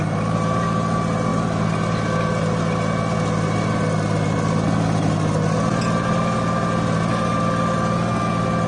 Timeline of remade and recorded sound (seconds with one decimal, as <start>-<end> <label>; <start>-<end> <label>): 0.0-8.7 recorded